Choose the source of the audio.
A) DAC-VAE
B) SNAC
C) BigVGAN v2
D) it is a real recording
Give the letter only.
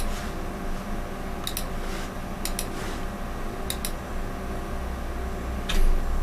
D